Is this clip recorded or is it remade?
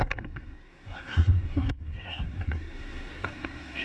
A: remade